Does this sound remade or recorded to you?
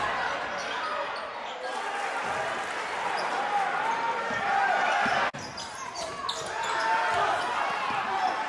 recorded